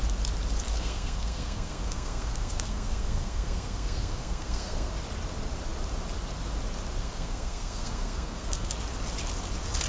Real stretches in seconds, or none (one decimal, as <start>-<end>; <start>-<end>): 0.0-0.7; 4.9-7.0; 8.7-9.9